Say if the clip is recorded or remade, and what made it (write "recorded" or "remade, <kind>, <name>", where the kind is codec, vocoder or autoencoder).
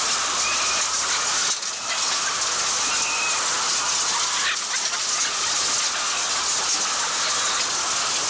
recorded